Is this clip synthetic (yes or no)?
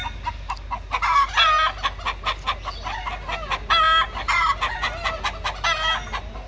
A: no